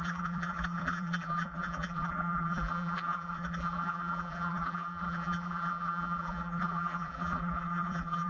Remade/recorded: remade